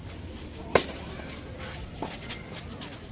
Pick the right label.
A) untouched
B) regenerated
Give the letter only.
A